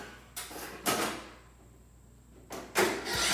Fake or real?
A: real